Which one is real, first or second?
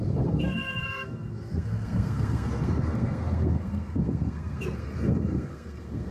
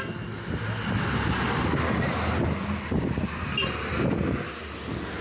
second